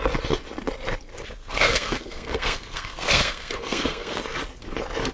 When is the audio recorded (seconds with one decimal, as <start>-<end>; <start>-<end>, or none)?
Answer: 0.0-1.1; 4.2-5.1